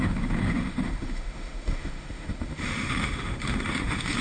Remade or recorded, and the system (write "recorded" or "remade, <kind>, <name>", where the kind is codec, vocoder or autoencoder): remade, autoencoder, DAC-VAE